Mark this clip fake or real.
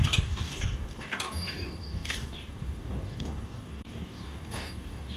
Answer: fake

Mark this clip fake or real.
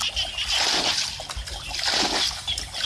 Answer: real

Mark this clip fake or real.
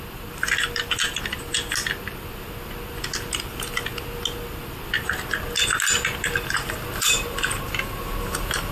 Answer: real